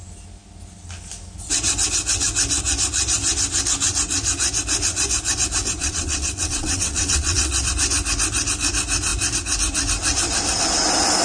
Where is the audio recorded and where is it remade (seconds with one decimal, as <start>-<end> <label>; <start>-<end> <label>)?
0.0-5.8 recorded; 5.8-7.5 remade; 7.5-11.2 recorded